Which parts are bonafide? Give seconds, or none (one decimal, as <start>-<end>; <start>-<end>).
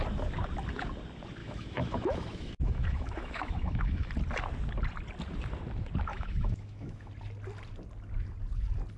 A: 0.0-1.4; 4.1-6.1; 7.1-9.0